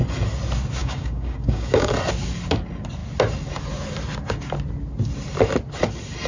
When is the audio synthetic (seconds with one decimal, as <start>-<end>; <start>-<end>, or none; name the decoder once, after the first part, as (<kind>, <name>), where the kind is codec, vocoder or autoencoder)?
0.8-1.9 (codec, DAC)